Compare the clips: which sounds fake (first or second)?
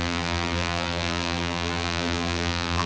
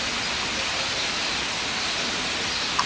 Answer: first